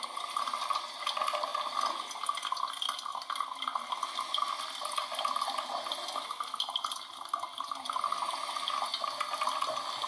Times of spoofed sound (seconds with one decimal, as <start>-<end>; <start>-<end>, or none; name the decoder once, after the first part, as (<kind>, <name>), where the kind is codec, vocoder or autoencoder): none